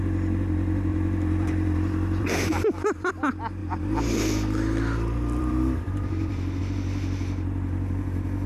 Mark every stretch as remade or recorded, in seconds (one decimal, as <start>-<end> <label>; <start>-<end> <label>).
0.0-0.9 recorded; 0.9-3.1 remade; 3.1-3.6 recorded; 3.6-6.6 remade; 6.6-8.5 recorded

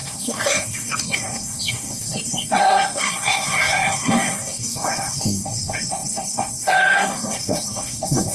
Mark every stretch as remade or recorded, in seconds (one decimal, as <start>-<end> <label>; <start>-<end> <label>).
0.0-8.3 remade

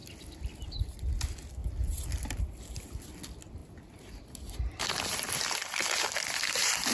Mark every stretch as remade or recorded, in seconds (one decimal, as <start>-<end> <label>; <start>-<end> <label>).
0.0-1.2 remade; 1.2-1.6 recorded; 1.6-2.4 remade; 2.4-6.9 recorded

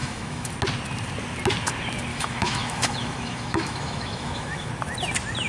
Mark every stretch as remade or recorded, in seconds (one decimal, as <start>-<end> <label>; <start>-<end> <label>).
0.0-0.5 remade; 0.5-2.1 recorded; 2.1-4.7 remade; 4.7-5.5 recorded

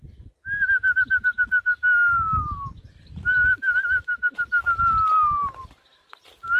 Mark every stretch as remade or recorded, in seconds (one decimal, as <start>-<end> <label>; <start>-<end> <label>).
0.0-3.3 recorded; 3.3-4.1 remade; 4.1-6.6 recorded